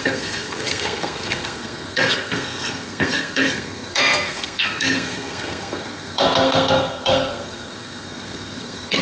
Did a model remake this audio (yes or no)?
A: yes